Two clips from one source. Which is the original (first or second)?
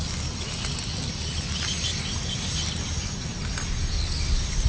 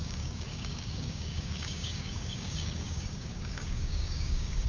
first